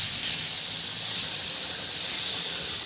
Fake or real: real